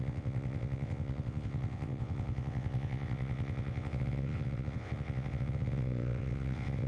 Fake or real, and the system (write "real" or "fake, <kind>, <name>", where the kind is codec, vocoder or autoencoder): fake, vocoder, WaveNeXt